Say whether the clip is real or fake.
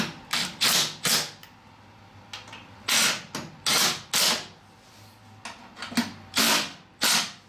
real